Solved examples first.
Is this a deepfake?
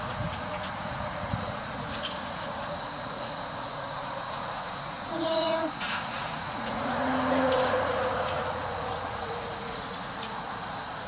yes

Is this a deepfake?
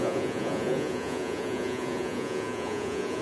yes